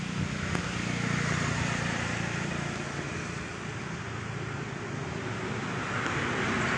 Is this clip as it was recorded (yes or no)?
yes